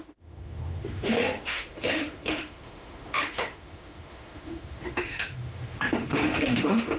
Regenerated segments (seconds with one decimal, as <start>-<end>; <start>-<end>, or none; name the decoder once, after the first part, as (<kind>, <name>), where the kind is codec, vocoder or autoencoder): 0.0-7.0 (autoencoder, DAC-VAE)